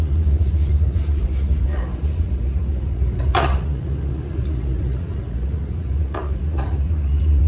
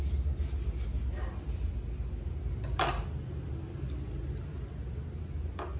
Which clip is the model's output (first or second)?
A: first